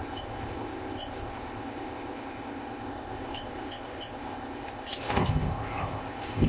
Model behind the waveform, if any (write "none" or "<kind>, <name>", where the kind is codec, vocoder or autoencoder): codec, ZipCodec